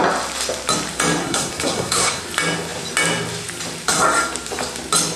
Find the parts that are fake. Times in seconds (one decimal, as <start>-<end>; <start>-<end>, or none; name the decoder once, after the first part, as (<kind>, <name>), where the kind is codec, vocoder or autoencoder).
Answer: 1.2-2.2 (codec, SNAC)